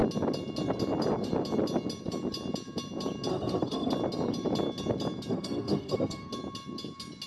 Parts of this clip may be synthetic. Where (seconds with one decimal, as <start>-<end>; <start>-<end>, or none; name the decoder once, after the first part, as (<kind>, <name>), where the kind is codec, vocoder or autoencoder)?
3.3-3.9 (codec, SNAC); 5.3-6.3